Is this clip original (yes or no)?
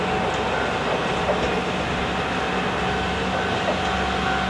yes